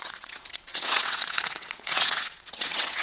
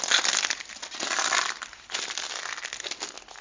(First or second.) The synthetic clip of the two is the first